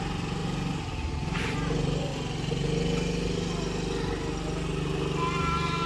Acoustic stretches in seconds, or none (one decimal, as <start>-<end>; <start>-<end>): 0.4-0.9; 2.1-5.9